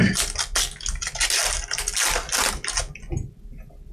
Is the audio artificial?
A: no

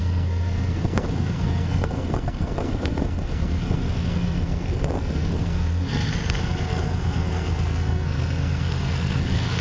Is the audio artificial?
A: yes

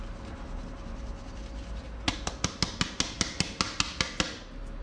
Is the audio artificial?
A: no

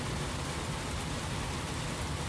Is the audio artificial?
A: no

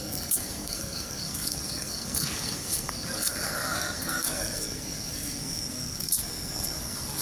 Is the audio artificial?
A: yes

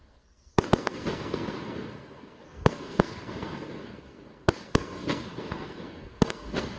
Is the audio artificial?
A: yes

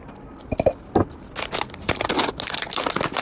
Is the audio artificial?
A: no